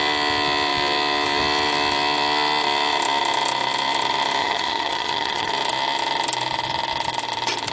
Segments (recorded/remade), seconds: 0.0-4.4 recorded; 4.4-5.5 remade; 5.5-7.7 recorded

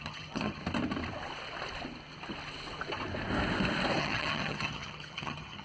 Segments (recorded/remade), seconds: 0.0-0.6 remade; 0.6-4.0 recorded; 4.0-5.6 remade